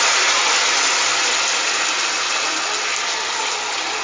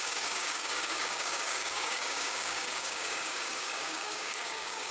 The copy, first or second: second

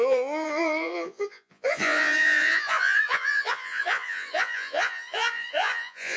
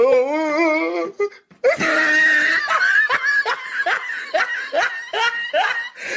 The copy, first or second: first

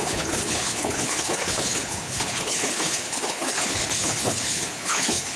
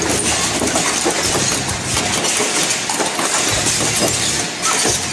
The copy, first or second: first